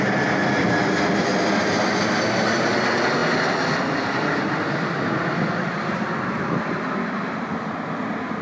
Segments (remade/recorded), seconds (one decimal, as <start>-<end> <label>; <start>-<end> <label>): 0.0-8.4 recorded